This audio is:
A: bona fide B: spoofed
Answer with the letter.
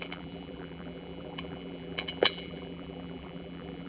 B